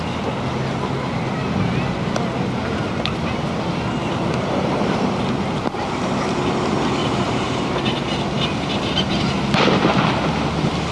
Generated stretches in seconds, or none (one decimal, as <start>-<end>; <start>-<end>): 4.0-4.8; 7.0-7.8

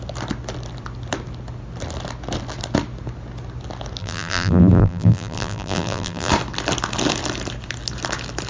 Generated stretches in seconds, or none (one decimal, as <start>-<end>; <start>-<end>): 4.0-6.3

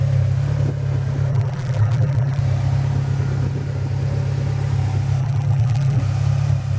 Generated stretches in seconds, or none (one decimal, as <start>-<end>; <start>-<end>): 1.3-2.4; 5.2-6.0